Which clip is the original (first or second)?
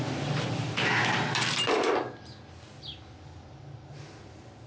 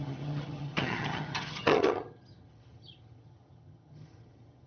first